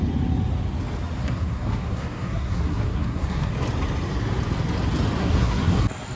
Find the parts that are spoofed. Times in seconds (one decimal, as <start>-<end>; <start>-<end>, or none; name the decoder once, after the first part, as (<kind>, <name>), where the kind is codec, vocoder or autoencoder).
1.2-3.5 (codec, SNAC); 5.2-5.8

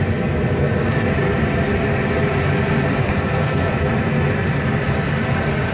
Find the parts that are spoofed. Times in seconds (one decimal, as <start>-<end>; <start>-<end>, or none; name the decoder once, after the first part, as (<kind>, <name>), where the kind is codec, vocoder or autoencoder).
3.0-3.7 (codec, SNAC)

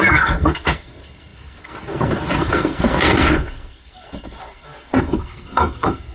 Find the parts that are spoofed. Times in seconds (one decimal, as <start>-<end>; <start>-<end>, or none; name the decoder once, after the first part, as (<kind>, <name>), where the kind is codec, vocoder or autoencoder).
0.0-6.1 (codec, SNAC)

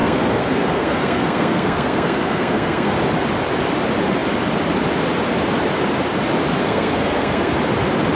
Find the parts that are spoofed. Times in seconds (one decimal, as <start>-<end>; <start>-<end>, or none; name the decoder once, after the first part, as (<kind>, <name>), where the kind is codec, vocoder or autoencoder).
0.0-2.9 (codec, SNAC); 6.6-7.5

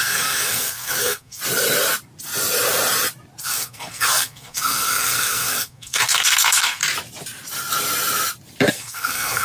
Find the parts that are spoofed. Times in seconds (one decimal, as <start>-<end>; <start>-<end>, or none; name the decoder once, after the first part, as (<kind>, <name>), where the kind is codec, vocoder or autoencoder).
0.0-1.4 (codec, SNAC); 3.4-6.8; 8.7-9.4

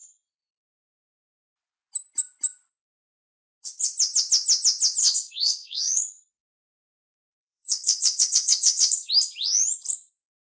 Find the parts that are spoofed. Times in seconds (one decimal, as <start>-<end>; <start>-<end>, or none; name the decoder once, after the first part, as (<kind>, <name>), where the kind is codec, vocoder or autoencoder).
5.0-9.1 (codec, SNAC)